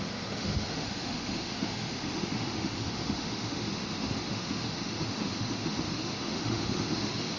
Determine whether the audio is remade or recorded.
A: remade